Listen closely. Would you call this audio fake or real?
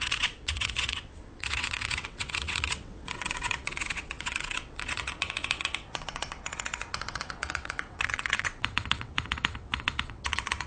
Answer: fake